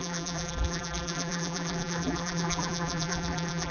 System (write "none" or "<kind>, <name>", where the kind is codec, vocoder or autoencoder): vocoder, BigVGAN v2